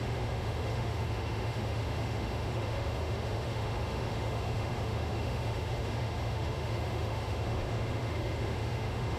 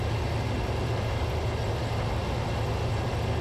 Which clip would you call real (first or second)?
second